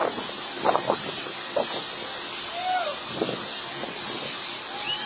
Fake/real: real